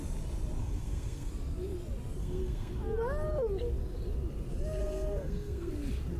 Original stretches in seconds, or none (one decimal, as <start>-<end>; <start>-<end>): 0.0-0.6; 1.3-2.2; 2.7-4.8; 5.7-6.2